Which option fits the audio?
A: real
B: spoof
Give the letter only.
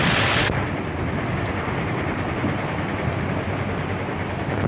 A